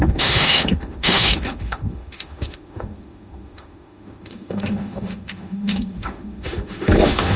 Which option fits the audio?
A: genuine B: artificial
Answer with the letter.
B